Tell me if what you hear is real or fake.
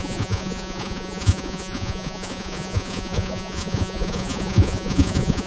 fake